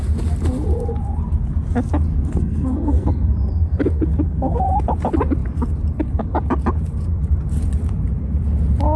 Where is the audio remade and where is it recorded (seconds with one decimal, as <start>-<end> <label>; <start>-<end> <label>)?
0.0-2.1 recorded; 2.1-4.7 remade; 4.7-9.0 recorded